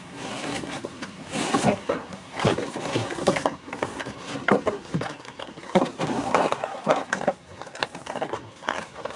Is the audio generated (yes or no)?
yes